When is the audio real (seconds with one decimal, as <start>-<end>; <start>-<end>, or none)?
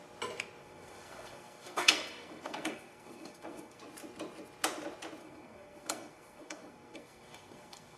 0.0-0.6; 3.8-5.2